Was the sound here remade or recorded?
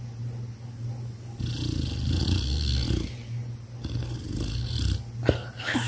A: recorded